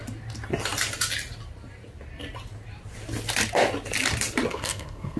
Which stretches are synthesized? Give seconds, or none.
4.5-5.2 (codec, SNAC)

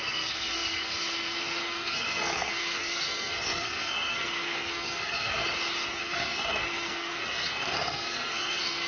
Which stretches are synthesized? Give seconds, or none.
0.0-5.4 (codec, SNAC); 6.0-8.9

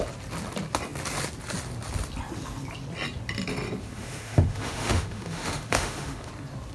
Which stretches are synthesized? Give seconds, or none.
3.8-6.3 (autoencoder, DAC-VAE)

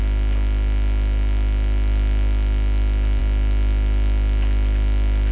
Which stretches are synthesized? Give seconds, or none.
none

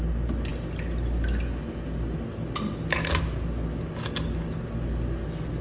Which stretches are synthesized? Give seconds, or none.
none